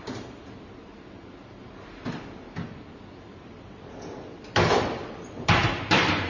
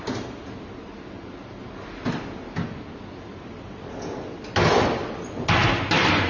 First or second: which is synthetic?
first